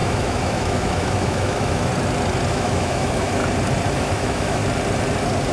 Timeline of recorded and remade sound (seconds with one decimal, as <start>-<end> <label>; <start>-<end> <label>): 0.0-1.9 remade; 1.9-2.5 recorded; 2.5-3.4 remade; 3.4-3.9 recorded; 3.9-4.6 remade; 4.6-5.5 recorded